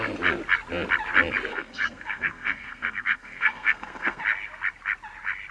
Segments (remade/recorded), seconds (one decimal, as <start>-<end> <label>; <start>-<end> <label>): 0.0-1.5 recorded; 1.5-4.2 remade; 4.2-5.5 recorded